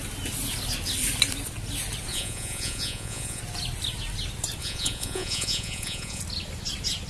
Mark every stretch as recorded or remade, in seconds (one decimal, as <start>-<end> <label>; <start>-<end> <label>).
0.0-2.1 recorded; 2.1-3.4 remade; 3.4-4.6 recorded; 4.6-6.2 remade; 6.2-7.1 recorded

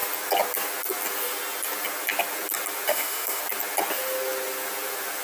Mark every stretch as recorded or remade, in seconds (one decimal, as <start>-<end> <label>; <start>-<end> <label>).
0.0-2.9 recorded; 2.9-3.4 remade; 3.4-5.2 recorded

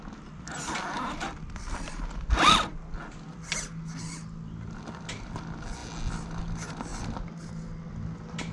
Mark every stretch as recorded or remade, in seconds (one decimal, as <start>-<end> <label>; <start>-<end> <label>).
0.0-8.5 recorded